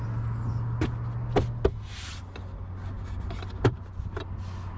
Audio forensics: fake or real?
real